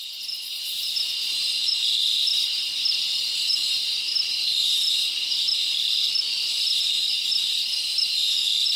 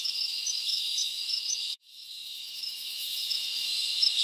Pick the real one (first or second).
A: first